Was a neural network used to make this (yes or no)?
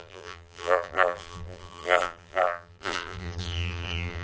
yes